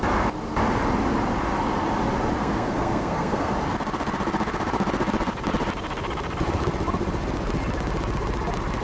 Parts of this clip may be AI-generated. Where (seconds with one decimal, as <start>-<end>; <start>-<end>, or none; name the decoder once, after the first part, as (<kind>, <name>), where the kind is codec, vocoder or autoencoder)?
2.4-3.5 (codec, SNAC)